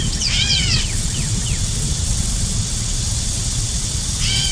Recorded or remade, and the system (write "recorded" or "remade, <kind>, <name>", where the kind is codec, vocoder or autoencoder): remade, vocoder, WaveNeXt